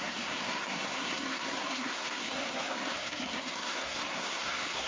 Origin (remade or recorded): remade